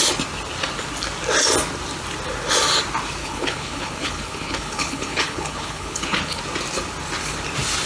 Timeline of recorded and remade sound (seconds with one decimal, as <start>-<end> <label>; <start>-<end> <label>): 0.0-3.2 recorded; 3.2-6.4 remade; 6.4-7.9 recorded